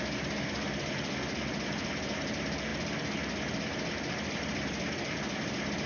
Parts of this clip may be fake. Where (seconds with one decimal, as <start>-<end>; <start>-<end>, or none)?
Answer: none